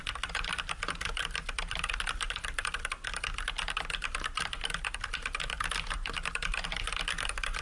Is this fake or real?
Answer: real